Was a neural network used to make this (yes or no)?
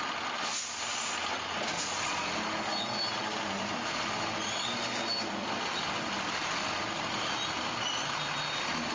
no